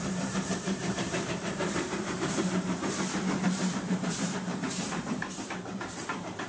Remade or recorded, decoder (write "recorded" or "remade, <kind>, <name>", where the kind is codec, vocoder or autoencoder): remade, vocoder, BigVGAN v2